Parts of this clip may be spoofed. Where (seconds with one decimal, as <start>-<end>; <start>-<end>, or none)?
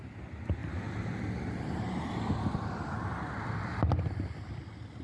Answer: 0.6-3.6